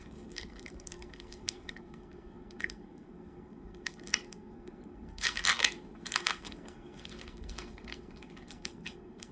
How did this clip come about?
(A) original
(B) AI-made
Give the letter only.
B